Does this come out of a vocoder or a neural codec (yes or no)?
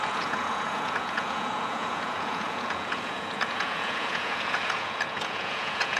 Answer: yes